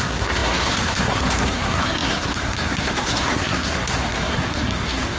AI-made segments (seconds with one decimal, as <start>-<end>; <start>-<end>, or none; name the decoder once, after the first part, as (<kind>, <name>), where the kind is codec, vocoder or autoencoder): 0.0-5.2 (codec, SNAC)